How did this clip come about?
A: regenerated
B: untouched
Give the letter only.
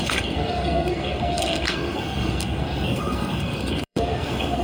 A